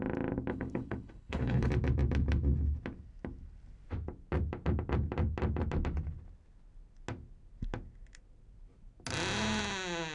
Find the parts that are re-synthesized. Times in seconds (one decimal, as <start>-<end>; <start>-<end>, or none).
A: 0.5-1.7